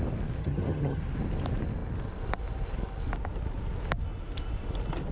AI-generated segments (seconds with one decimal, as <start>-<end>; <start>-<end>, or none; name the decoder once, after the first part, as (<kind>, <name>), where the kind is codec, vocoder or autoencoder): 0.4-1.0 (vocoder, HiFi-GAN)